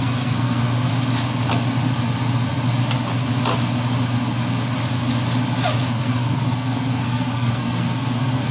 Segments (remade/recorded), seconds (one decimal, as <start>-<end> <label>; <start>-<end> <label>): 0.0-0.9 remade; 0.9-5.9 recorded; 5.9-8.5 remade